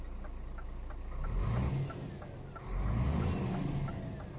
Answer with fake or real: real